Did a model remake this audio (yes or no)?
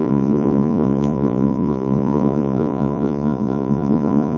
yes